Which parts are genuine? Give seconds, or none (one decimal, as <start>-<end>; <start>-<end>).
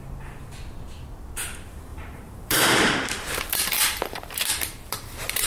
0.0-1.9